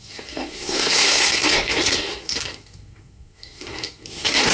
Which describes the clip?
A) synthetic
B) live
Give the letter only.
A